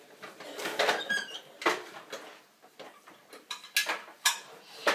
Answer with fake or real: real